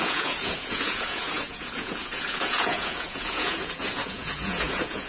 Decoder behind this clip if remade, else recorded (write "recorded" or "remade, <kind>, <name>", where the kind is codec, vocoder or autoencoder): remade, vocoder, Vocos